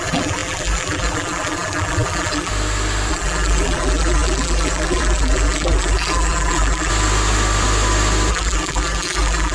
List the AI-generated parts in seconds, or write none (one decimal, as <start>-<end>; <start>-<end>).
0.0-2.5; 3.1-6.9; 8.3-9.5